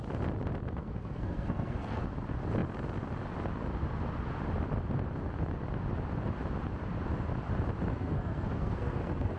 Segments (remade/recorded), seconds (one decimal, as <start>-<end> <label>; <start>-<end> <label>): 0.0-0.8 recorded; 0.8-2.0 remade; 2.0-7.9 recorded; 7.9-9.4 remade